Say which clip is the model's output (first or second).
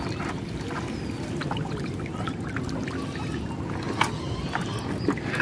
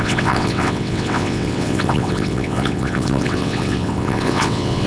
second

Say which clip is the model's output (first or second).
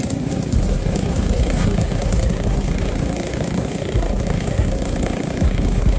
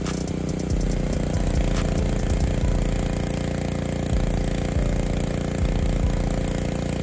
first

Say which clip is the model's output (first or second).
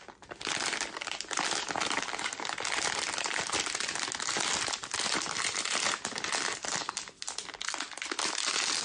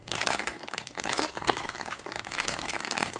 second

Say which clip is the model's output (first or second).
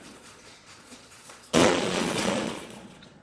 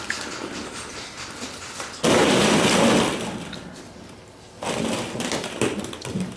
first